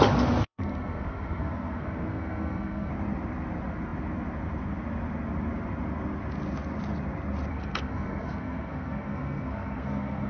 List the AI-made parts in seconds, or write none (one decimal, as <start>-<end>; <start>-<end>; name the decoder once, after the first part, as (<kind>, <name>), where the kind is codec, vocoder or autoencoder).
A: 0.4-2.9 (codec, SNAC); 7.5-10.3